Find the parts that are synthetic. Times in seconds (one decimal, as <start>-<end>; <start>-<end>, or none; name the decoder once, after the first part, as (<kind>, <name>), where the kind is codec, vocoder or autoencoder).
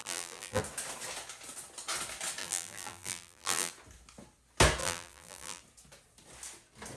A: 0.0-0.6 (vocoder, BigVGAN v2); 2.4-3.7; 4.8-5.6